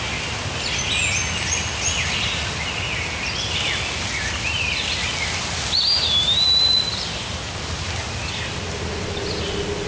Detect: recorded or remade recorded